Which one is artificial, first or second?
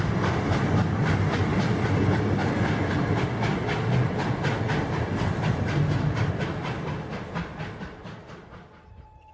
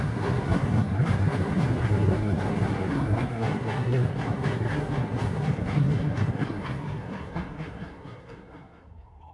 second